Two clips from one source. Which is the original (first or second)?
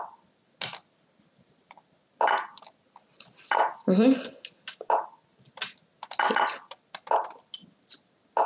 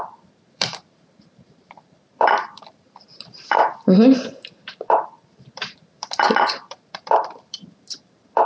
first